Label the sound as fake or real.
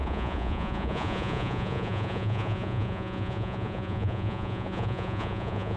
fake